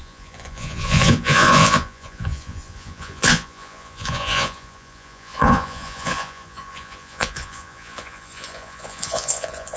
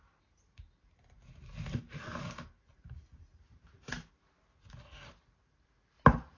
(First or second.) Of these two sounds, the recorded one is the second